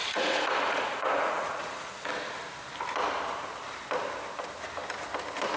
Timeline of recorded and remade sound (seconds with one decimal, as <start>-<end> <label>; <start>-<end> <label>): 0.0-2.1 remade; 2.1-5.6 recorded